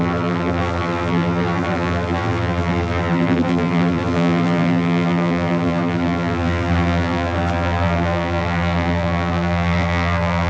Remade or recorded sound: remade